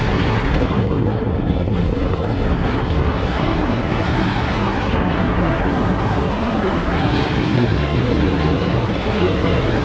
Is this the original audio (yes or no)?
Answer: no